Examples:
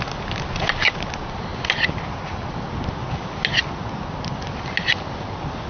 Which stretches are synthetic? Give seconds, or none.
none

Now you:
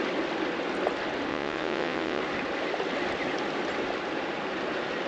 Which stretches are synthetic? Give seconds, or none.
1.3-2.2

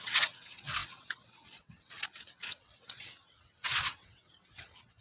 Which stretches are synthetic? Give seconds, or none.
0.0-5.0

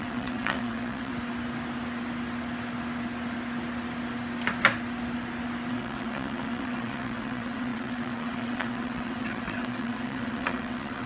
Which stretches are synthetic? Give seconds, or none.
0.0-1.1; 5.7-11.1

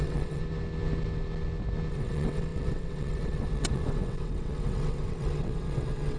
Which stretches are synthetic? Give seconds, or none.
0.0-0.4; 1.9-6.2

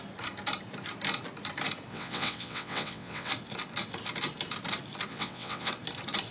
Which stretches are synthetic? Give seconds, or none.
1.9-3.3; 5.1-5.7